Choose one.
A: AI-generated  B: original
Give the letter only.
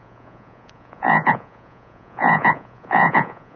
A